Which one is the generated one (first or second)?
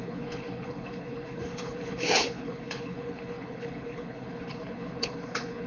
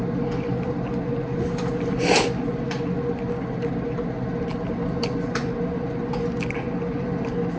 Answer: first